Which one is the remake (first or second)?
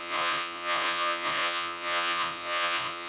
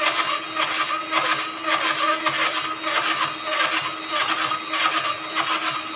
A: first